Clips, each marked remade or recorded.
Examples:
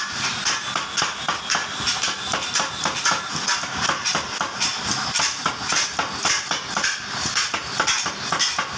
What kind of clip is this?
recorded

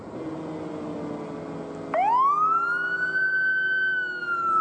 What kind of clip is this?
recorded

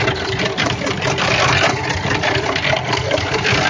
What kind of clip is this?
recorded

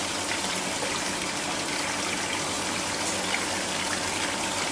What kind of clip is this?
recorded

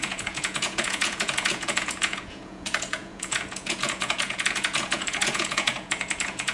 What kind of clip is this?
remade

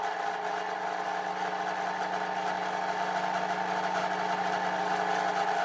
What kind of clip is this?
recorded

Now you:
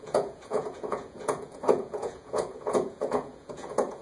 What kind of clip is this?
remade